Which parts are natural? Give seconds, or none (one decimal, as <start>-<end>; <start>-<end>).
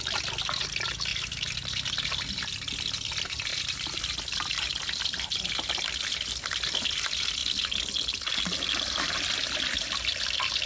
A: 0.0-10.7